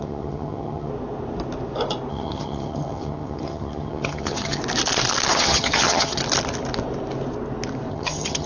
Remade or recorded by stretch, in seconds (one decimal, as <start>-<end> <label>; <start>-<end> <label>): 0.0-0.9 remade; 0.9-2.1 recorded; 2.1-4.6 remade; 4.6-5.3 recorded; 5.3-6.2 remade; 6.2-7.9 recorded; 7.9-8.5 remade